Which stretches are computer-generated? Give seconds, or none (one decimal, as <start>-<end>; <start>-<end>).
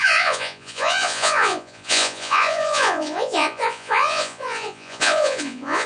0.0-5.9